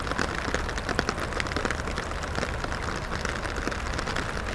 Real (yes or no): yes